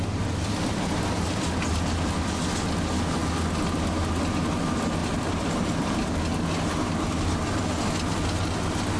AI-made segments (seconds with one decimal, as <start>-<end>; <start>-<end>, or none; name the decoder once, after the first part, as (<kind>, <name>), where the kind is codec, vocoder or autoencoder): 5.0-6.1 (vocoder, BigVGAN v2)